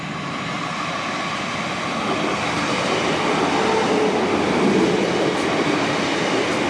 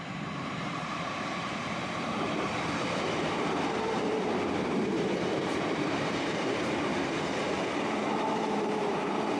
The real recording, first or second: first